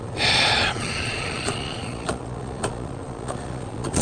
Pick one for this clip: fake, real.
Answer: fake